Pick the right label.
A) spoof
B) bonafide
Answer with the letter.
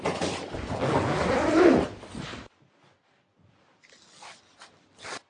B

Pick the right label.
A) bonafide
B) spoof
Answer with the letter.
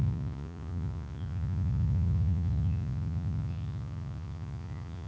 B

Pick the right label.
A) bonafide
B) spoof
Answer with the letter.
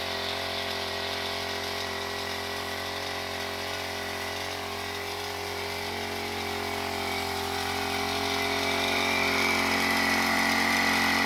A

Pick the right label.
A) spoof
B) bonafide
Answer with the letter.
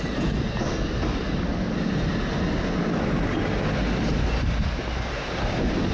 B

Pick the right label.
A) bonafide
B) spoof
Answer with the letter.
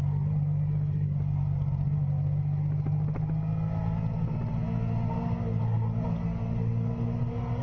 A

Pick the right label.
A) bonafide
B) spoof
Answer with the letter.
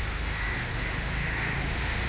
B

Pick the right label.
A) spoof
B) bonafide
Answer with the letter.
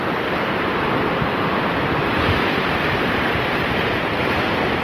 A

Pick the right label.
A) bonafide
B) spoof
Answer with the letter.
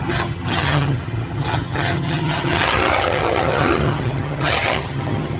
B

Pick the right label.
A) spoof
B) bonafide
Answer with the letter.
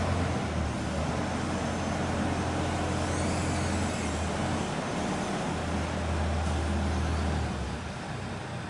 B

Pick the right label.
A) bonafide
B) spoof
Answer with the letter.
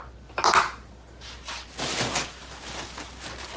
A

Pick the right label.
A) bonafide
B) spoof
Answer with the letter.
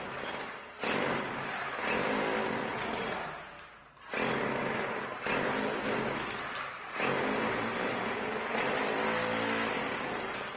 A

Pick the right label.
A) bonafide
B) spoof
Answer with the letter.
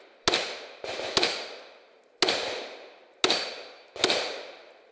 A